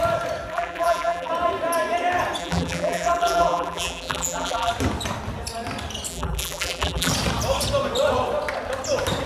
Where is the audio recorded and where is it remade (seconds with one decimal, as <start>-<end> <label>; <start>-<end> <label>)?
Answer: 0.0-0.5 recorded; 0.5-1.3 remade; 1.3-2.4 recorded; 2.4-4.7 remade; 4.7-6.1 recorded; 6.1-7.1 remade; 7.1-9.3 recorded